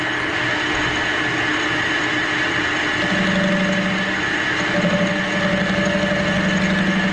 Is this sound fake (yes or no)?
no